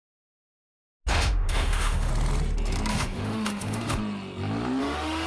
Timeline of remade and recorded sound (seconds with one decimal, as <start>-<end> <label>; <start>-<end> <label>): 0.0-1.1 recorded; 1.1-2.1 remade; 2.1-2.9 recorded; 2.9-4.0 remade; 4.0-4.8 recorded; 4.8-5.3 remade